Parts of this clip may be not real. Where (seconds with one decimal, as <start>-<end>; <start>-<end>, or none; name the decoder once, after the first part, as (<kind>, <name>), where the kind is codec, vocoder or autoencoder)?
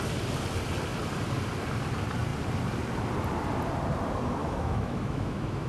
4.4-5.7 (autoencoder, DAC-VAE)